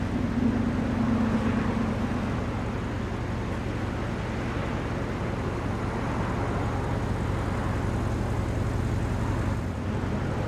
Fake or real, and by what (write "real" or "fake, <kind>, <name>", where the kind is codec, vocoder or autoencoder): real